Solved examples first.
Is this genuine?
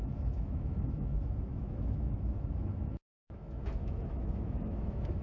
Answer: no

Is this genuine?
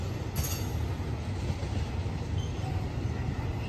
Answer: yes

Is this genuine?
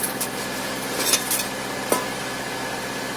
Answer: yes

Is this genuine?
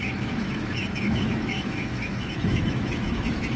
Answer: no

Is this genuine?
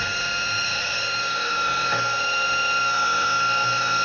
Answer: no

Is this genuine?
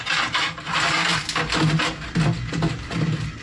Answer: yes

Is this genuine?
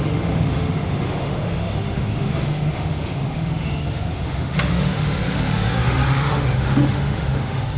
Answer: no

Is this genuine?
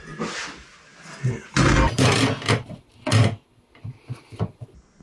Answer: yes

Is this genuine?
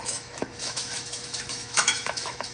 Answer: no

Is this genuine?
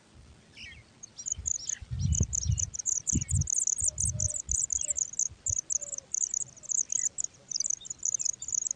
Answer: yes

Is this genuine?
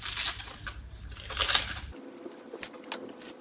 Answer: yes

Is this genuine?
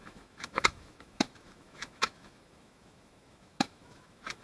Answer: no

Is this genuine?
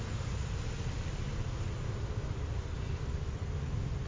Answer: yes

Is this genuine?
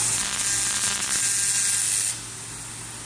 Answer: yes